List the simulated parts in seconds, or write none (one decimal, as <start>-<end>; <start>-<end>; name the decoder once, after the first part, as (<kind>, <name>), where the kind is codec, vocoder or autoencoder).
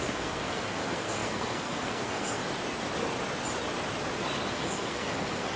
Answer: 0.0-2.4 (codec, SNAC); 4.5-5.6